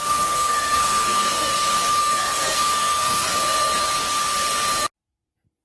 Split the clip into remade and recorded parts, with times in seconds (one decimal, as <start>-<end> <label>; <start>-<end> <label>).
0.0-1.5 remade; 1.5-2.0 recorded; 2.0-3.3 remade; 3.3-5.6 recorded